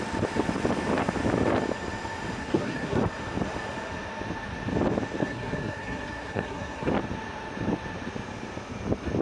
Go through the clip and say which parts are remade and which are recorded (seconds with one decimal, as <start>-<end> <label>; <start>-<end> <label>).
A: 0.0-2.4 recorded; 2.4-3.0 remade; 3.0-5.2 recorded; 5.2-6.9 remade; 6.9-9.2 recorded